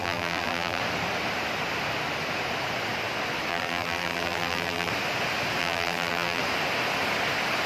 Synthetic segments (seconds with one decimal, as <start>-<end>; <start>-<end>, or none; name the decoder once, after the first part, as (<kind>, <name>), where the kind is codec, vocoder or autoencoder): 0.0-0.8 (vocoder, BigVGAN v2); 3.5-4.9; 5.6-6.4